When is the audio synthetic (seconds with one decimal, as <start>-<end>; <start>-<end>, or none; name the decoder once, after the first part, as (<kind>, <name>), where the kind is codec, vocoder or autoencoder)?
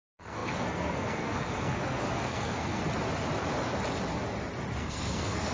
0.0-2.8 (codec, SNAC); 4.8-5.5